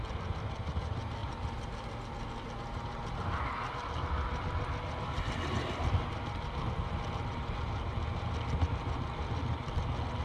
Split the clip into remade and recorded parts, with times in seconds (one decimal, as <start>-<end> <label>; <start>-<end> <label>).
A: 0.0-1.2 recorded; 1.2-1.8 remade; 1.8-10.2 recorded